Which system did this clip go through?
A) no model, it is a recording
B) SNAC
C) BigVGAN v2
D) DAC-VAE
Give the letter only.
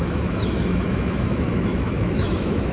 D